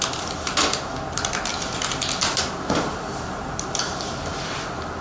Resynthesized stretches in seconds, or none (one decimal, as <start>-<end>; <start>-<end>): none